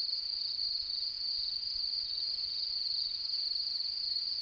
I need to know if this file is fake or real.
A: real